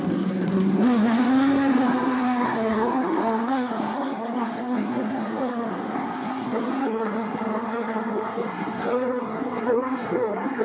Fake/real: fake